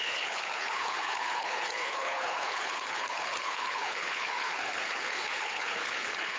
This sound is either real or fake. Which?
fake